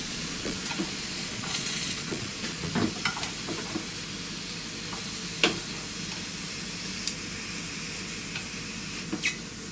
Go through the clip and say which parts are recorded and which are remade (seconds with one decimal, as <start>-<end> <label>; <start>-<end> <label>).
0.0-2.7 remade; 2.7-9.7 recorded